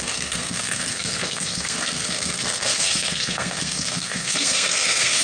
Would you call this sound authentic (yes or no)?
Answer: no